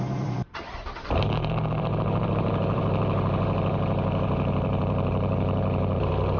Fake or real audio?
fake